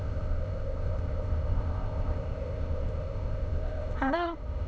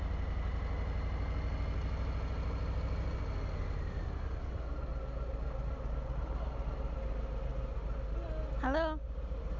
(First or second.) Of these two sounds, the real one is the second